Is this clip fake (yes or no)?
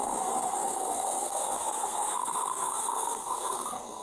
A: yes